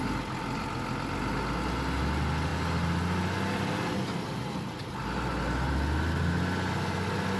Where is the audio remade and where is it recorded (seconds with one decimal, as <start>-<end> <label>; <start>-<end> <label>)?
0.0-7.4 recorded